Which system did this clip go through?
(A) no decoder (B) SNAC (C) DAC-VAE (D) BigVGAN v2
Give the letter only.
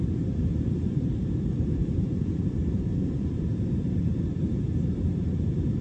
D